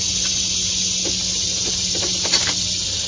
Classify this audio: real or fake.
real